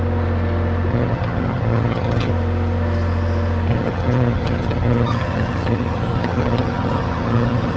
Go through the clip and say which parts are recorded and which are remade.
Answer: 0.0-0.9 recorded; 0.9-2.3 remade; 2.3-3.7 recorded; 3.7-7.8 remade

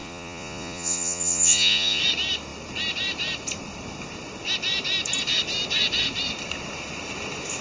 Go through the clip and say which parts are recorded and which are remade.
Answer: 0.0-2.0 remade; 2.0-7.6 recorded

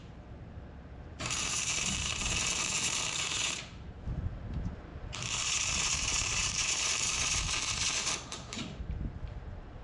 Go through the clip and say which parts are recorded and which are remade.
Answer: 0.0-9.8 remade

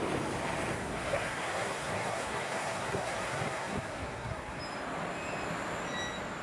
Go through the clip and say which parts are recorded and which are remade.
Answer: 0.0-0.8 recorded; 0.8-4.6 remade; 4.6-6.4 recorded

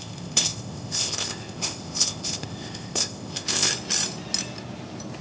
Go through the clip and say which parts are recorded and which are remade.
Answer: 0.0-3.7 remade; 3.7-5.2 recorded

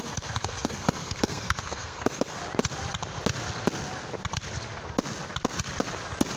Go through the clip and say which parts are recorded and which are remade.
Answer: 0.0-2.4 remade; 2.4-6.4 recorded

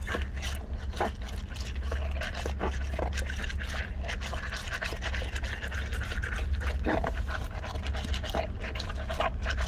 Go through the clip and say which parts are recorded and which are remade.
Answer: 0.0-9.7 recorded